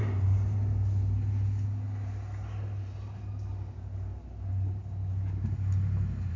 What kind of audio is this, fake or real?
real